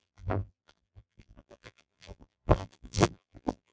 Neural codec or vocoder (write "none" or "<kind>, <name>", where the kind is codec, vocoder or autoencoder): vocoder, BigVGAN v2